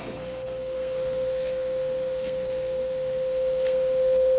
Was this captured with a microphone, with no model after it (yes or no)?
no